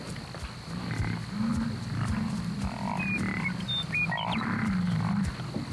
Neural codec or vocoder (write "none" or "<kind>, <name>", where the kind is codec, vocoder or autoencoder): none